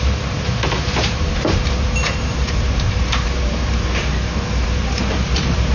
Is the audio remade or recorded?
remade